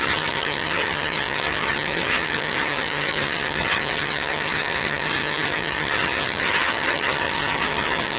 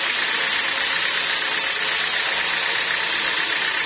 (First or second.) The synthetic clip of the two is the first